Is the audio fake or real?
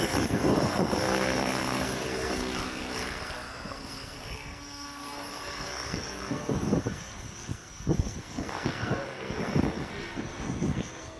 fake